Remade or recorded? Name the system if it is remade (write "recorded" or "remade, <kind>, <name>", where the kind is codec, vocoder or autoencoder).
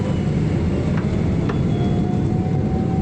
recorded